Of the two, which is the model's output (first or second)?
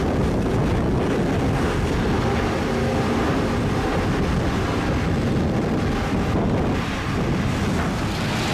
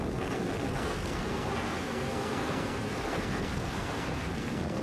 second